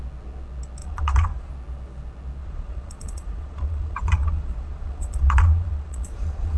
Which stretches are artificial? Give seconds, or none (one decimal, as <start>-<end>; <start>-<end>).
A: 0.8-1.5; 2.4-6.6